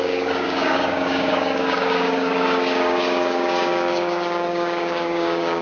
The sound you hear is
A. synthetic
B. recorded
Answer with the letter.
A